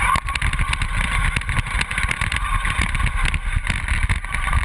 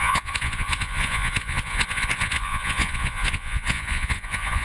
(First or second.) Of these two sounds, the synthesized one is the second